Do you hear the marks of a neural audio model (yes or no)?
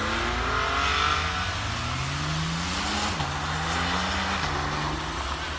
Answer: no